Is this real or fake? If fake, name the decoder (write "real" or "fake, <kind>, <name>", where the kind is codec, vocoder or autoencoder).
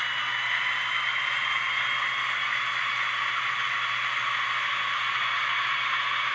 real